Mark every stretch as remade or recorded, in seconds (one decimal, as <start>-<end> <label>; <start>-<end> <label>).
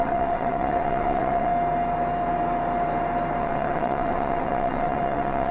0.0-1.5 remade; 1.5-3.4 recorded; 3.4-5.5 remade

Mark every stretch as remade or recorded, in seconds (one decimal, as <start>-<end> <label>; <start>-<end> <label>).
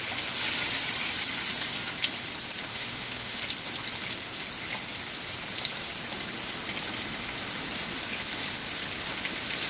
0.0-2.7 recorded; 2.7-3.4 remade; 3.4-9.7 recorded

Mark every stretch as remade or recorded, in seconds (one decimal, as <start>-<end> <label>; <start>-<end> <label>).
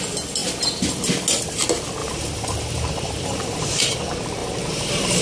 0.0-2.0 recorded; 2.0-3.8 remade; 3.8-4.4 recorded; 4.4-5.2 remade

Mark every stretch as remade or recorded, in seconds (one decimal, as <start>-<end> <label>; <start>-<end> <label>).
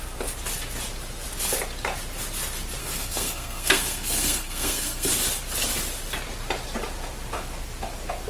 0.0-2.8 recorded; 2.8-5.1 remade; 5.1-8.3 recorded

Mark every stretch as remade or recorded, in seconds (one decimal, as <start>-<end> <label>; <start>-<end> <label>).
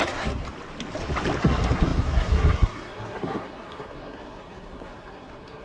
0.0-0.4 remade; 0.4-1.4 recorded; 1.4-5.6 remade